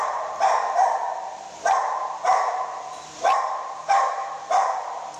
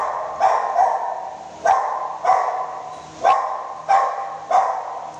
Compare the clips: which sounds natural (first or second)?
second